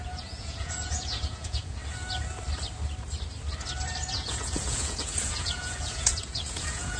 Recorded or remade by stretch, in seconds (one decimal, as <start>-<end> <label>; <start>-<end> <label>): 0.0-1.8 remade; 1.8-4.1 recorded; 4.1-7.0 remade